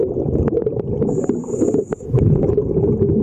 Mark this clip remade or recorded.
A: recorded